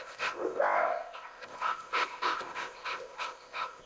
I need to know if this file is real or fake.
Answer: fake